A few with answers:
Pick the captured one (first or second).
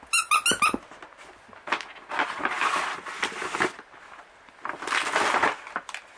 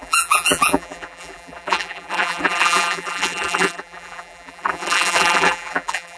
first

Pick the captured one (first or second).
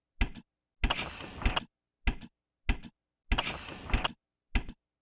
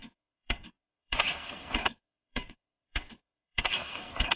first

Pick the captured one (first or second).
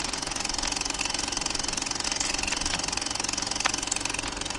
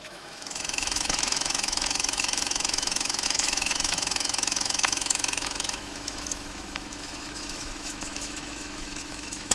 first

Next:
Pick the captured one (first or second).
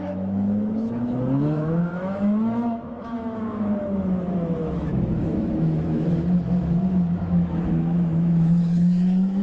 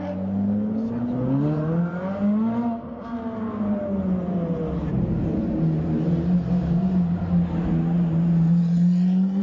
second